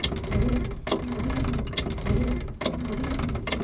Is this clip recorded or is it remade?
recorded